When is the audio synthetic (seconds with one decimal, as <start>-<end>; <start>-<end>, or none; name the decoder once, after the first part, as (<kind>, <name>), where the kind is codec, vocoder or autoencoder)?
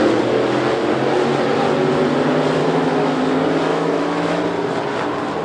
2.6-3.2 (autoencoder, DAC-VAE); 3.7-4.4